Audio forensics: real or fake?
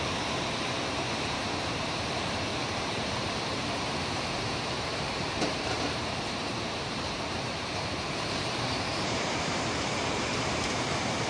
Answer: fake